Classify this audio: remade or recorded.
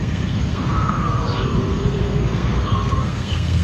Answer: remade